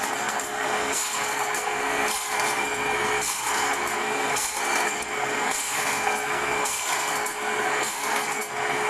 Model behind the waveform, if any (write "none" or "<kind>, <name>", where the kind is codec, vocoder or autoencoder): codec, SNAC